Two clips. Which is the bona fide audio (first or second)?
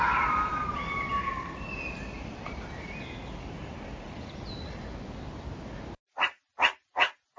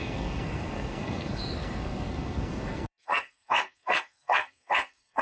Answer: first